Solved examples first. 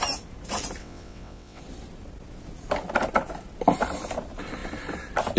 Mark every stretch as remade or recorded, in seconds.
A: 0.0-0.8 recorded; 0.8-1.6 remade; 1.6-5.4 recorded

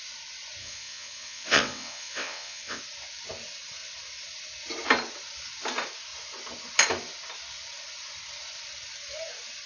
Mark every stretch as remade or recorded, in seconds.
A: 0.0-0.6 recorded; 0.6-2.8 remade; 2.8-9.7 recorded

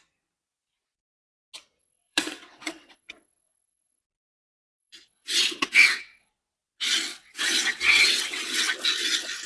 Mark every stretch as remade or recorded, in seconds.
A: 0.0-1.8 recorded; 1.8-4.0 remade; 4.0-4.8 recorded; 4.8-6.3 remade; 6.3-7.1 recorded; 7.1-8.6 remade; 8.6-9.5 recorded

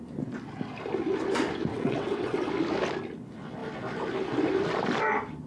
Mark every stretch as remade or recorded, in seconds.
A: 0.0-1.7 recorded; 1.7-2.5 remade; 2.5-5.5 recorded

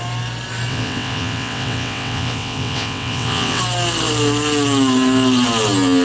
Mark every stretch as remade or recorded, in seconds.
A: 0.0-0.7 recorded; 0.7-3.6 remade; 3.6-6.0 recorded

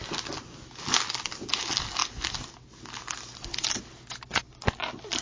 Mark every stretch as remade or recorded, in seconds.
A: 0.0-5.2 recorded

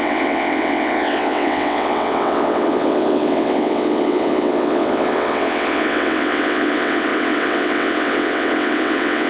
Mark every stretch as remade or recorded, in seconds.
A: 0.0-9.3 remade

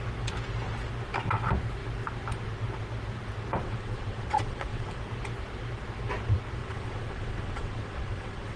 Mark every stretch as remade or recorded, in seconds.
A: 0.0-3.6 recorded; 3.6-5.0 remade; 5.0-6.6 recorded; 6.6-8.6 remade